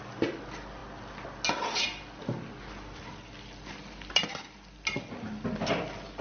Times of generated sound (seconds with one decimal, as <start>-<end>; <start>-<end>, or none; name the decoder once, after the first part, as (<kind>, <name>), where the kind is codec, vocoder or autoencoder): none